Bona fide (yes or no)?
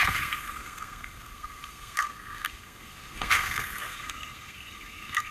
no